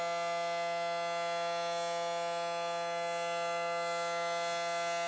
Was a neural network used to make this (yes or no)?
no